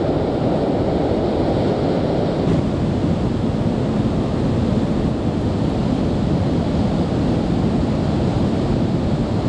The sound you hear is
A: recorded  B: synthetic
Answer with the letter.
A